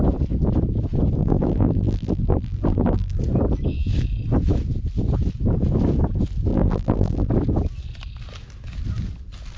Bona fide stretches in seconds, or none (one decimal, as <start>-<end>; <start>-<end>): 0.0-1.2; 3.2-6.5; 7.3-9.6